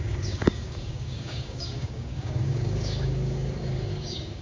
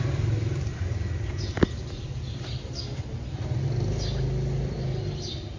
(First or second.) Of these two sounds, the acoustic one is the second